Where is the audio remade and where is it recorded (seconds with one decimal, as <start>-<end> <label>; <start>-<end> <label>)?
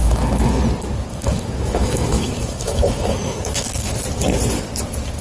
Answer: 0.0-0.6 remade; 0.6-1.1 recorded; 1.1-3.9 remade; 3.9-5.2 recorded